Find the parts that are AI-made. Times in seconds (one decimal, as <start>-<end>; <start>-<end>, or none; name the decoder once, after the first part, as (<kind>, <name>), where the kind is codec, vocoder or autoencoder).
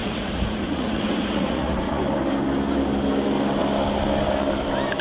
0.0-2.0 (vocoder, Vocos)